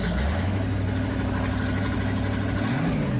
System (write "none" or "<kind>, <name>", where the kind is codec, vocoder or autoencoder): none